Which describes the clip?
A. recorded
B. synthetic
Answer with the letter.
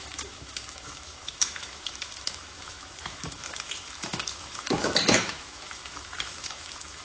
B